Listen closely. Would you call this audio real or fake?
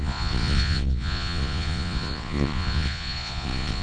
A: fake